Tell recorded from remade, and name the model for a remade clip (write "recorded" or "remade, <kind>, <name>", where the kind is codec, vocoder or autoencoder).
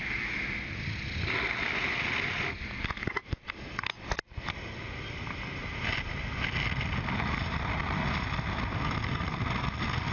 recorded